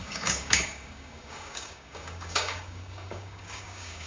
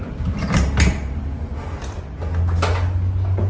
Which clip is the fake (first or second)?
first